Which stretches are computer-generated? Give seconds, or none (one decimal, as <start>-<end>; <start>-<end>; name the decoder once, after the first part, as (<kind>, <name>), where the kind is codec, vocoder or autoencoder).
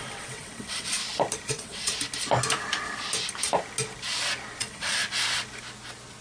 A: 0.0-1.0 (vocoder, WaveNeXt); 1.5-1.9; 4.6-5.0